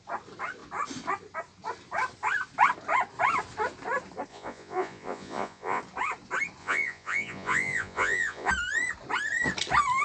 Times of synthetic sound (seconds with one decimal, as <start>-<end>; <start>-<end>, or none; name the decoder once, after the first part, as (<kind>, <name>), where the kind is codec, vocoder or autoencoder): 4.3-5.8 (vocoder, Vocos); 6.6-8.5